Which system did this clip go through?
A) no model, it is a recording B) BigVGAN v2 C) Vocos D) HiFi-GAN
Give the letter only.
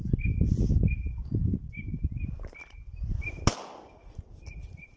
A